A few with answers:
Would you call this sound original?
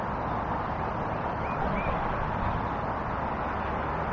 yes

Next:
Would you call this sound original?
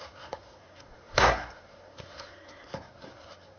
no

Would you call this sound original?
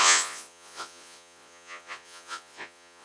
no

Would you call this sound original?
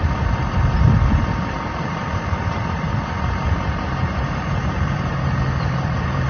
no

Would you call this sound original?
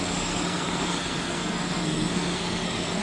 no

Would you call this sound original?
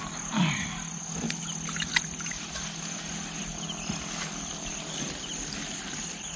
yes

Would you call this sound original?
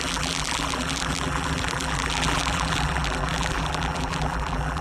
no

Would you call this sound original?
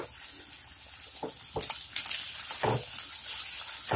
yes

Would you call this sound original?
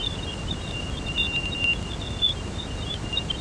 yes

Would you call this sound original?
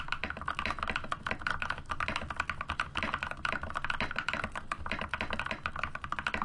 yes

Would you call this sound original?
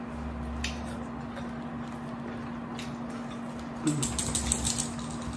yes